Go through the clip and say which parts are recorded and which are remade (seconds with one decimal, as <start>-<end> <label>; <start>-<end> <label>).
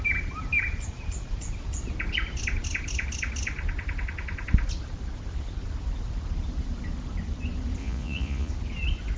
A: 0.0-7.8 recorded; 7.8-8.5 remade; 8.5-9.2 recorded